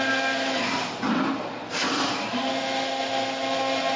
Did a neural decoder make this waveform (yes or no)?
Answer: no